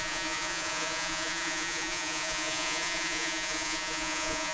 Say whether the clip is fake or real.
fake